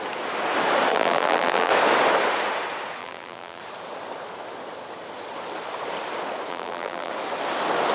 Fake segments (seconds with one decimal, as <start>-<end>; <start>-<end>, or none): 0.9-1.7; 3.0-3.6; 6.5-7.1